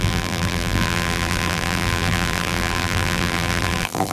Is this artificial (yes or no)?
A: yes